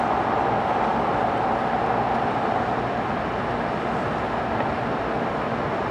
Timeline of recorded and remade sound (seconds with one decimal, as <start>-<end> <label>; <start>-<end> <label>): 0.0-5.9 recorded